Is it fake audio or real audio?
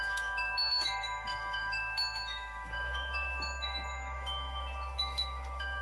fake